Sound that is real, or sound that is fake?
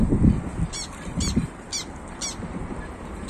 real